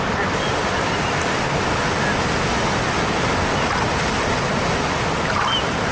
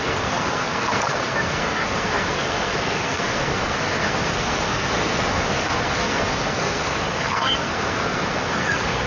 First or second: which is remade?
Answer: second